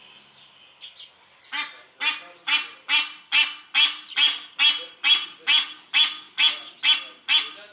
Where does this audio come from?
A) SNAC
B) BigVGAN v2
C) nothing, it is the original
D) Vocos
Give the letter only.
C